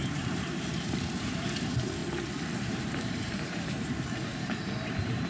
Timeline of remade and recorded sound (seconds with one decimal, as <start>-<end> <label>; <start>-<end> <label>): 0.0-2.0 remade; 2.0-2.6 recorded; 2.6-5.3 remade